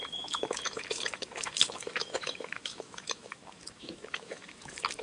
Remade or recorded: remade